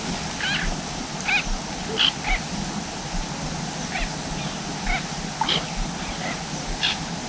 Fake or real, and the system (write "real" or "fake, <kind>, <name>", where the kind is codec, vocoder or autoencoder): real